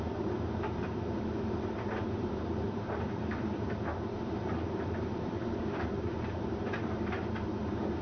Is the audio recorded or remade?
remade